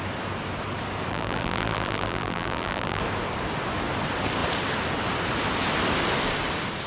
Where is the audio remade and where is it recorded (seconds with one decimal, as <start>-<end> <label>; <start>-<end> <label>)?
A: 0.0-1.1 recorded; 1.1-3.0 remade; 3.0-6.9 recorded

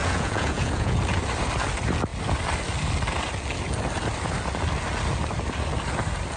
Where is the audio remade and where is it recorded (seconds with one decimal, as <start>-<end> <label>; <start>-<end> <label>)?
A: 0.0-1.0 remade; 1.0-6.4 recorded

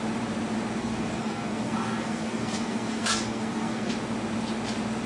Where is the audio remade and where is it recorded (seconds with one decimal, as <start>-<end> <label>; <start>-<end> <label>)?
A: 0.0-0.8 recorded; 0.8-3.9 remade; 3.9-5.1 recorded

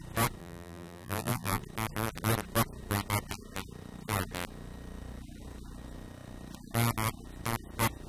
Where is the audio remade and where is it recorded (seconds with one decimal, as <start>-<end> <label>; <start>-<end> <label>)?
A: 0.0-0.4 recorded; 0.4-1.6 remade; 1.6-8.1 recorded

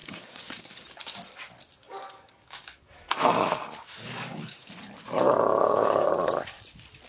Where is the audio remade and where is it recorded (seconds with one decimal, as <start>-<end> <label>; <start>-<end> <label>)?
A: 0.0-0.8 remade; 0.8-1.8 recorded; 1.8-4.7 remade; 4.7-5.6 recorded; 5.6-6.1 remade; 6.1-7.1 recorded

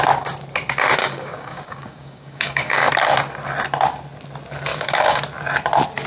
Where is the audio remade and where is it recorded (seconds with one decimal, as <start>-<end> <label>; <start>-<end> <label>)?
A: 0.0-1.0 recorded; 1.0-2.9 remade; 2.9-4.7 recorded; 4.7-5.2 remade; 5.2-6.1 recorded